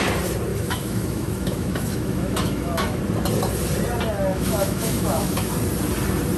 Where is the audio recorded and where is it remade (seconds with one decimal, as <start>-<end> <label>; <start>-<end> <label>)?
0.0-0.5 recorded; 0.5-3.0 remade; 3.0-4.3 recorded; 4.3-5.5 remade; 5.5-6.4 recorded